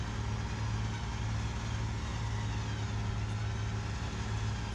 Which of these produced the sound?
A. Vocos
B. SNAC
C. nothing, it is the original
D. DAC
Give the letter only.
C